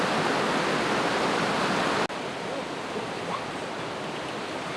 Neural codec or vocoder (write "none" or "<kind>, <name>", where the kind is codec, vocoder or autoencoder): none